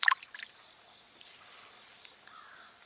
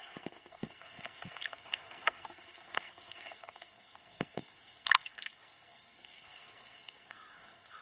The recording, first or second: first